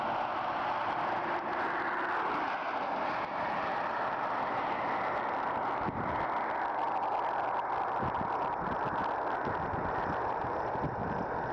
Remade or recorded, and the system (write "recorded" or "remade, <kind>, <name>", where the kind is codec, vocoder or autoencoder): recorded